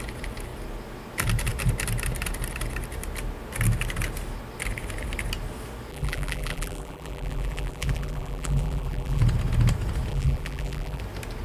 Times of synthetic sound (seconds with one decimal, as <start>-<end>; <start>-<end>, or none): 5.9-9.2; 10.1-11.0